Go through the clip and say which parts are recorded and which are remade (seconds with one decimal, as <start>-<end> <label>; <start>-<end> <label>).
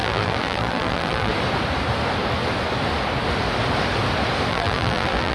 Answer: 0.0-1.3 remade; 1.3-4.5 recorded; 4.5-5.3 remade